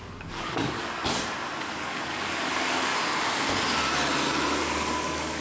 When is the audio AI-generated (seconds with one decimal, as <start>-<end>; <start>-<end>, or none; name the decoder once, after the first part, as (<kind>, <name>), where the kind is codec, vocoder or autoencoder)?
0.0-1.0 (codec, DAC); 1.6-2.9; 4.6-5.4